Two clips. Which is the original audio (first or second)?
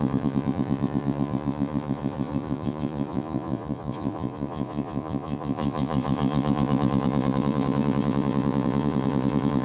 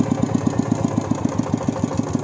second